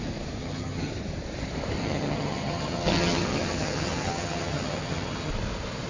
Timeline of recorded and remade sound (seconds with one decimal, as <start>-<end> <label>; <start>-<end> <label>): 0.0-0.4 recorded; 0.4-0.9 remade; 0.9-1.8 recorded; 1.8-5.3 remade; 5.3-5.9 recorded